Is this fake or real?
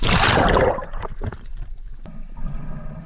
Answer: fake